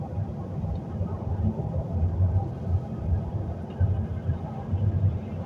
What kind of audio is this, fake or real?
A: real